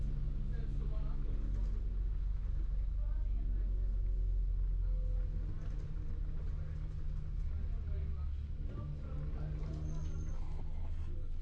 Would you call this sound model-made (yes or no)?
no